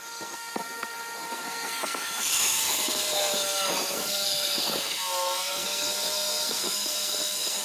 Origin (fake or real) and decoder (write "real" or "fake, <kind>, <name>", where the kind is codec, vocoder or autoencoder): fake, codec, SNAC